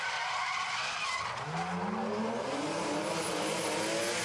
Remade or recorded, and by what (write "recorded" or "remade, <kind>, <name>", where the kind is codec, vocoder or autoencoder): recorded